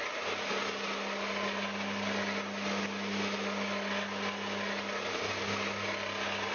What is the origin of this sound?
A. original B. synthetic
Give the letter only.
A